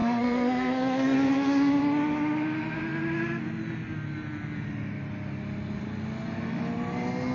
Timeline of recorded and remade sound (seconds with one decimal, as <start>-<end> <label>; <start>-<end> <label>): 0.0-1.3 remade; 1.3-7.3 recorded